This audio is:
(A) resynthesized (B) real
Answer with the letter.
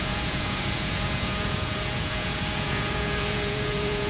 A